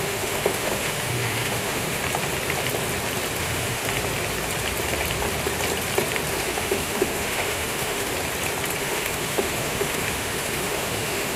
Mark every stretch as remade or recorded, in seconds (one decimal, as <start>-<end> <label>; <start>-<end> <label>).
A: 0.0-2.0 remade; 2.0-3.4 recorded; 3.4-3.8 remade; 3.8-6.3 recorded; 6.3-8.1 remade; 8.1-8.8 recorded; 8.8-11.4 remade